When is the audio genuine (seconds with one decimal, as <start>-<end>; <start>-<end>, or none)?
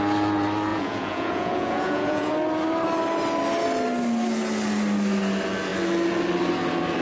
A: 0.0-0.7; 2.3-7.0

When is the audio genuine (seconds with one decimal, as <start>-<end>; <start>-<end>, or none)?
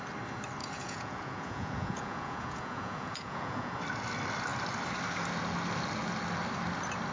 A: 0.0-0.6; 3.7-7.1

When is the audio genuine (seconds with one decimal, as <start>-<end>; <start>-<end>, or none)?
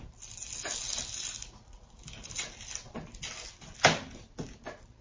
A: 0.0-1.4; 1.9-5.0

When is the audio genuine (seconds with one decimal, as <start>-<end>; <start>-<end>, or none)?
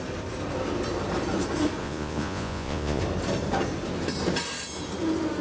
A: 0.0-1.8; 3.0-5.4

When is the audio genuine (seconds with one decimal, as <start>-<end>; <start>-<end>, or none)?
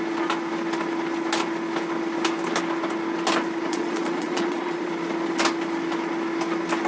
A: 0.0-3.7; 4.9-6.9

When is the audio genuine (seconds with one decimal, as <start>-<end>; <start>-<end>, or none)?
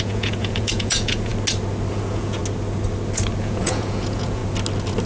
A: 1.3-1.9; 2.4-3.4; 4.4-5.1